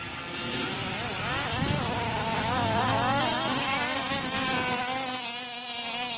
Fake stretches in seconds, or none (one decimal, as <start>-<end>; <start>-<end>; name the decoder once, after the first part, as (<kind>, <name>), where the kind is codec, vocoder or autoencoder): 1.1-4.8 (vocoder, BigVGAN v2)